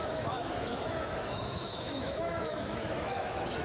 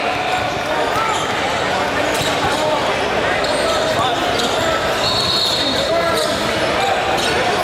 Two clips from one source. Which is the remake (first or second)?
first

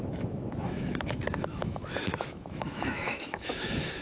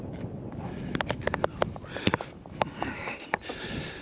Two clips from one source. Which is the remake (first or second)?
first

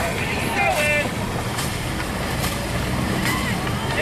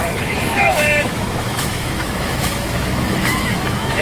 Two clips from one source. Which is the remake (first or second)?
second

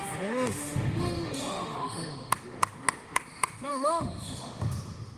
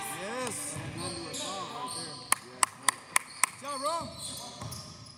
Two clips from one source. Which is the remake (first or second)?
first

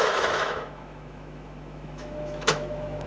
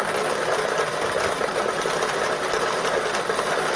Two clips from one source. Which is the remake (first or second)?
first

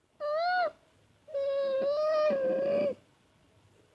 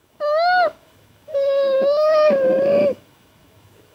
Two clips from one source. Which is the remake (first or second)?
second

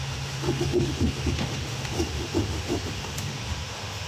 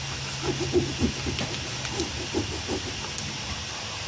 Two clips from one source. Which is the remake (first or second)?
first